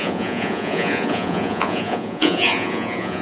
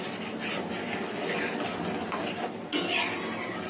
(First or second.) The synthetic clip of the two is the first